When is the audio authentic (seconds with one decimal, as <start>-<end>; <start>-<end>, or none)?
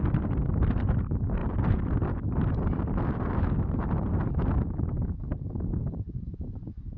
0.0-5.8; 6.6-7.0